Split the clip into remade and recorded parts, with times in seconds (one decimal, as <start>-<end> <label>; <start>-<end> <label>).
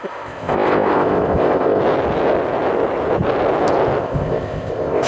0.0-1.8 remade; 1.8-4.0 recorded; 4.0-5.1 remade